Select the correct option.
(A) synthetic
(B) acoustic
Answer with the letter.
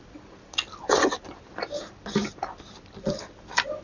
B